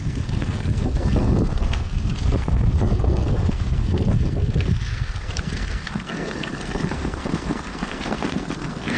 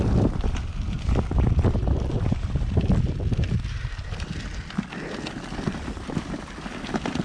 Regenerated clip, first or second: first